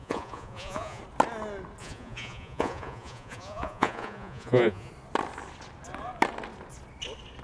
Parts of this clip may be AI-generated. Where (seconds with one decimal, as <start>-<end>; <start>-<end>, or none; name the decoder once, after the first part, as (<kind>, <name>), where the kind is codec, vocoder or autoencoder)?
0.0-1.0 (vocoder, Vocos); 1.8-4.9